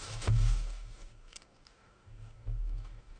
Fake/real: fake